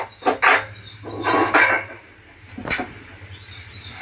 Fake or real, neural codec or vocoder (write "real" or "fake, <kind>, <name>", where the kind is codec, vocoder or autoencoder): real